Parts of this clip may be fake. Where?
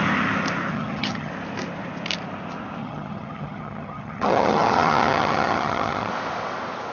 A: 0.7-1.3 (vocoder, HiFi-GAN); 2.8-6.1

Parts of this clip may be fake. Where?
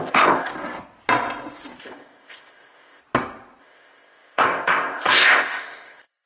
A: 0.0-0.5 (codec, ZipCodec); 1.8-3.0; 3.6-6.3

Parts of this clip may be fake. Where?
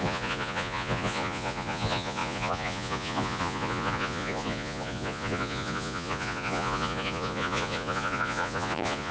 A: 0.0-9.1 (vocoder, Vocos)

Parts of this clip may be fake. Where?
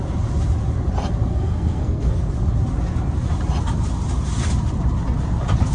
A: 1.3-2.3 (codec, SNAC)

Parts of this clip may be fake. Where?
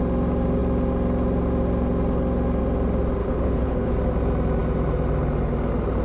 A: 3.2-3.9 (codec, HILCodec)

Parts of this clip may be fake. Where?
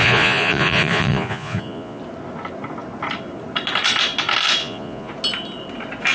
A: 0.0-2.0 (vocoder, Vocos); 4.6-5.1